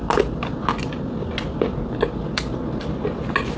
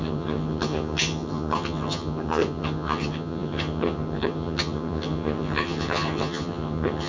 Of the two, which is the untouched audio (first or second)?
first